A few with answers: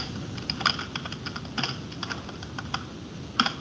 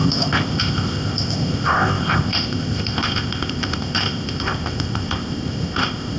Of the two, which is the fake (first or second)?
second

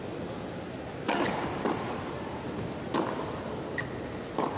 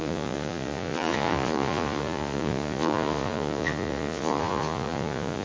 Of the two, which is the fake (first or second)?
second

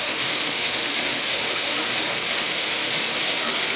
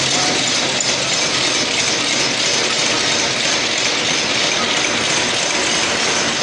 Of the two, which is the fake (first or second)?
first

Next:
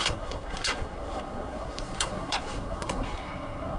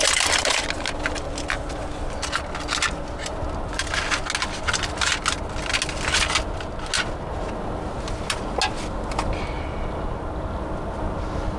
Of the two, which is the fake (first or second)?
first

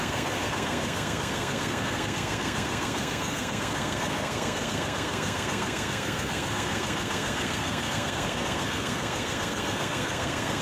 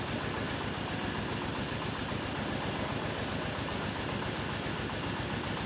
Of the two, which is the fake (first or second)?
first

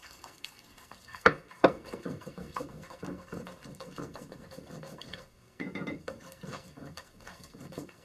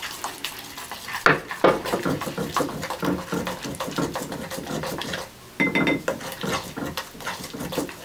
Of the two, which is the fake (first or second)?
first